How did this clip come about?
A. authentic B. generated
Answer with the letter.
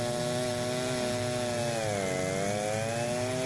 A